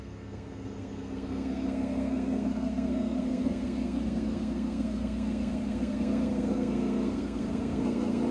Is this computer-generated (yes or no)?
yes